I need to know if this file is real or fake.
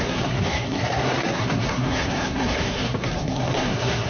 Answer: fake